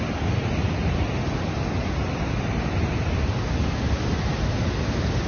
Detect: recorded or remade recorded